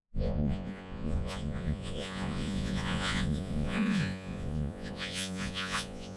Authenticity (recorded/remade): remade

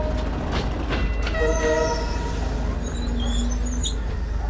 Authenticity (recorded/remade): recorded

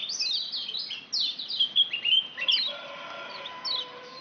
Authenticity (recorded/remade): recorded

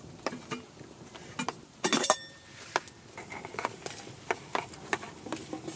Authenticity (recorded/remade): recorded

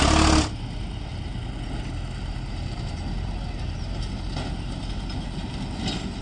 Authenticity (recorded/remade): recorded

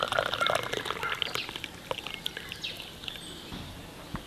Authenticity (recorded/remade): recorded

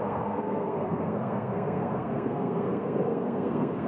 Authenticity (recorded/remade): remade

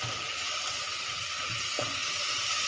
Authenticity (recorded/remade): recorded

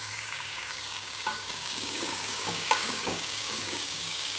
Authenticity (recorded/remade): remade